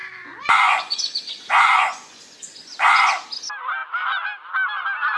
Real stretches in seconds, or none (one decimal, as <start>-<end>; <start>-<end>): 3.1-5.2